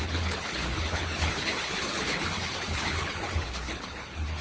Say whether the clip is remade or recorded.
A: remade